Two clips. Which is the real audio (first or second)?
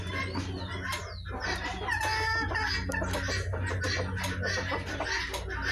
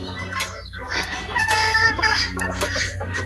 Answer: first